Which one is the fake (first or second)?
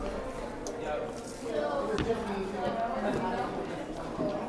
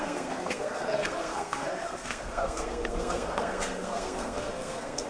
second